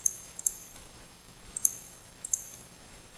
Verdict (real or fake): fake